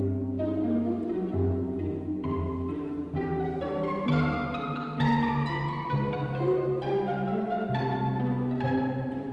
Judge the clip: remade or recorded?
recorded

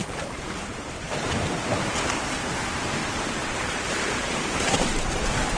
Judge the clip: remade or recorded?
remade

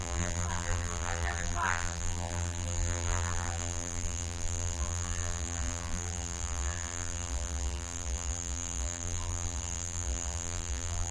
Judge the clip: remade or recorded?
remade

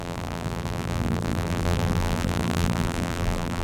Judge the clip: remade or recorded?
remade